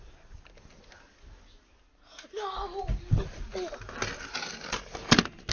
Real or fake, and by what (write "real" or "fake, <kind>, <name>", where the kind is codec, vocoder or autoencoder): real